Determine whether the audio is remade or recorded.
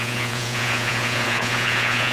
remade